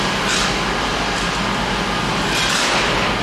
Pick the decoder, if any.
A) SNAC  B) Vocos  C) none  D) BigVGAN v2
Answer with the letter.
C